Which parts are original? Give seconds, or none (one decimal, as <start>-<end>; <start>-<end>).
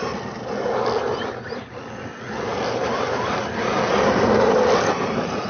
0.0-5.5